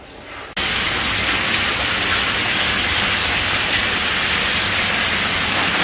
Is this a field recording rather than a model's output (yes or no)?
yes